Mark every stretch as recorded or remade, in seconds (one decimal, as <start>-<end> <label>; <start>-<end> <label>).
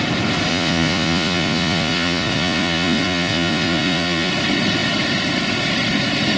0.0-0.5 recorded; 0.5-4.3 remade; 4.3-6.4 recorded